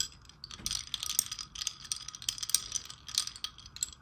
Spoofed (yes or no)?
no